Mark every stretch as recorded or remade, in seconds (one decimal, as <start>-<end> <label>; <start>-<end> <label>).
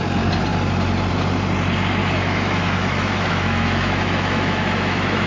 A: 0.0-2.0 recorded; 2.0-5.3 remade